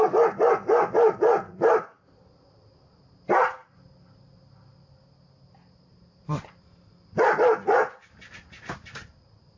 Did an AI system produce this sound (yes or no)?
no